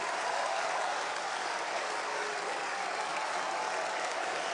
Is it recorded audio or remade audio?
remade